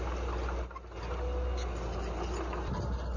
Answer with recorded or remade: recorded